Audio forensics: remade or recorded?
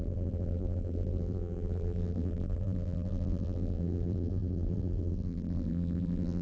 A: remade